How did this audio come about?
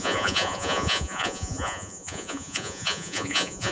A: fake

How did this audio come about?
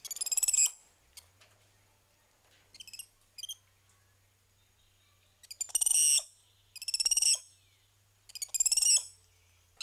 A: real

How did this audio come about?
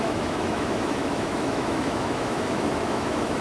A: fake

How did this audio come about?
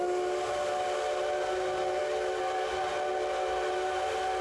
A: real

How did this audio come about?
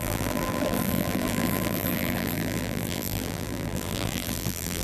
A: fake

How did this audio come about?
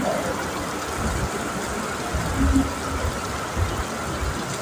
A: real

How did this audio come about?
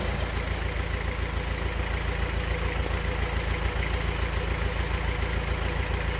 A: real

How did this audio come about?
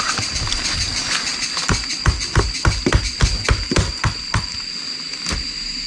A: real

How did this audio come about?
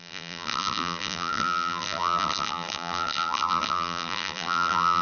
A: fake